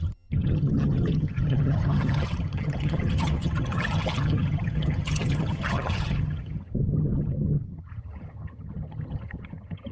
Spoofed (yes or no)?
yes